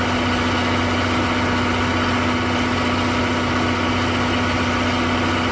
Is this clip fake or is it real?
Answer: real